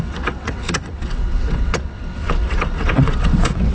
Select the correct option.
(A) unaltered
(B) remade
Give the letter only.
B